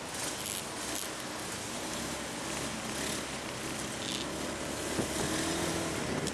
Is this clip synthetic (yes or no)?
no